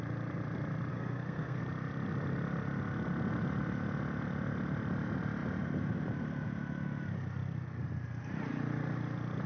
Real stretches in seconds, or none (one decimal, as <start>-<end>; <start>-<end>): 0.0-0.9; 1.6-9.5